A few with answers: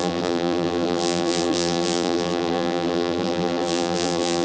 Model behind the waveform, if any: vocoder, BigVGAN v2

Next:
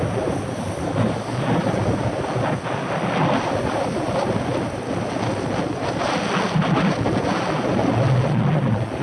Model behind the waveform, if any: none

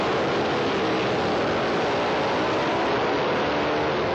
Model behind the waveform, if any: none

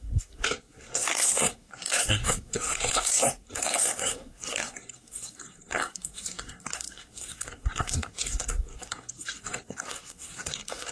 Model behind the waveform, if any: codec, SNAC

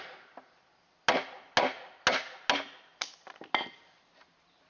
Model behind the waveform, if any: none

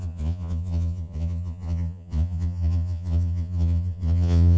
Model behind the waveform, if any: vocoder, Vocos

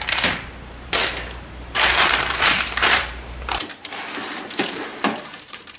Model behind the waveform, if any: vocoder, BigVGAN v2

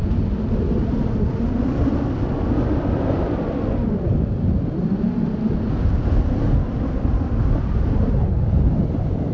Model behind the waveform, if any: none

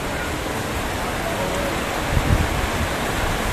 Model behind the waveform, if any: none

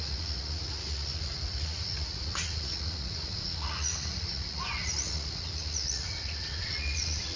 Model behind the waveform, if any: vocoder, Vocos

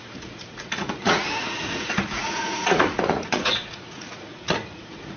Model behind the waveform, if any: vocoder, Vocos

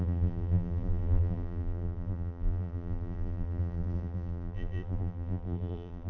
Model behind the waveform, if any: vocoder, BigVGAN v2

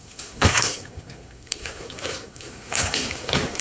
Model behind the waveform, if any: codec, SNAC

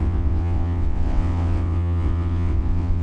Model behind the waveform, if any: vocoder, WaveNeXt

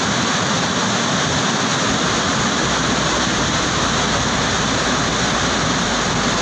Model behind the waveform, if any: none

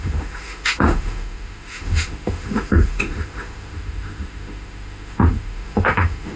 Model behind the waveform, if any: autoencoder, DAC-VAE